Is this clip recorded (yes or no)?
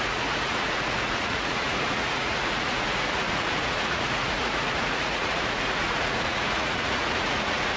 no